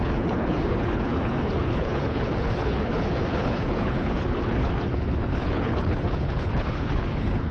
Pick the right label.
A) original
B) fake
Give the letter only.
B